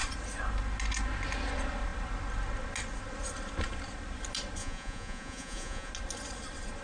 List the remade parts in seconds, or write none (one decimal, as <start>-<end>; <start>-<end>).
4.6-5.9